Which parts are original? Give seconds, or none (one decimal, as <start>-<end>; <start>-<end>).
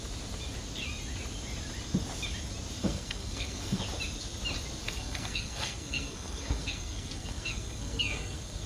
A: 0.0-2.8; 3.8-4.8